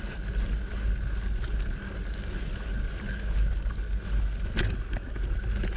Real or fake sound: real